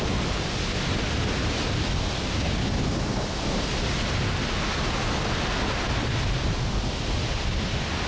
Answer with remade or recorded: recorded